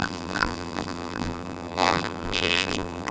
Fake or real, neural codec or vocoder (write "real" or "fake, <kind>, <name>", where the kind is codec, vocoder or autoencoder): fake, vocoder, BigVGAN v2